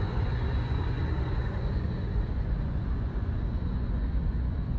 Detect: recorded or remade remade